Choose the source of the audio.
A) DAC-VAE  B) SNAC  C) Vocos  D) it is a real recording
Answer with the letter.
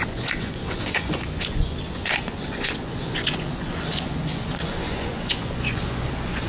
C